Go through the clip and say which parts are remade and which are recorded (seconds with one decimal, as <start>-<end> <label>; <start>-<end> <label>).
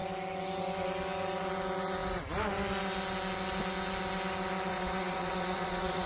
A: 0.0-4.7 recorded; 4.7-6.1 remade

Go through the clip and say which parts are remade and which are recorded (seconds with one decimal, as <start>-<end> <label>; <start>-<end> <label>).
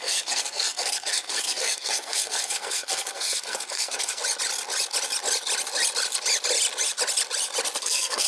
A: 0.0-4.2 remade; 4.2-7.8 recorded; 7.8-8.3 remade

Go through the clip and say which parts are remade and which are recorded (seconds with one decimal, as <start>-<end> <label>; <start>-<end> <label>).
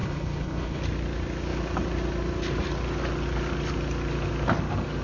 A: 0.0-0.8 remade; 0.8-5.0 recorded